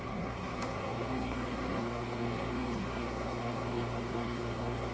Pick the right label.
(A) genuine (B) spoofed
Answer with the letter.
B